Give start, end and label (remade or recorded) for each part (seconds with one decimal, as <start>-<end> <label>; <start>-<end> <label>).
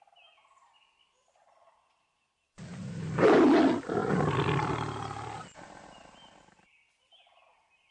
0.0-2.7 recorded; 2.7-3.5 remade; 3.5-7.9 recorded